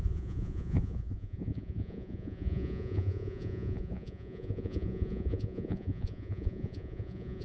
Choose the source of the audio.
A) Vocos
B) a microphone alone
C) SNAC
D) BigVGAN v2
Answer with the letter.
A